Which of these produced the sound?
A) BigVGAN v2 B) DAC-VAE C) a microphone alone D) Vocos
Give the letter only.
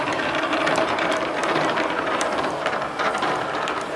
A